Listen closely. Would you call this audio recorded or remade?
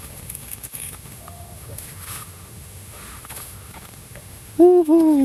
remade